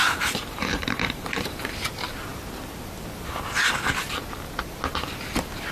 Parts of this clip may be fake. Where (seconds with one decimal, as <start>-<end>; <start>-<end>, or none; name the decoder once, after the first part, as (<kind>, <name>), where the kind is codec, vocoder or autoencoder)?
0.0-1.6 (vocoder, BigVGAN v2)